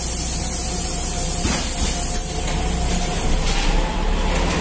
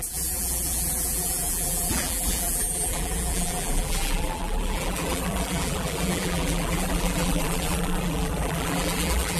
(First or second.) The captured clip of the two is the first